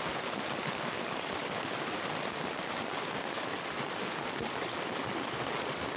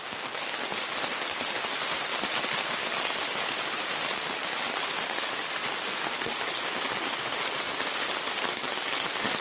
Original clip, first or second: second